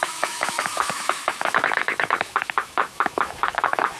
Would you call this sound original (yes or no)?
no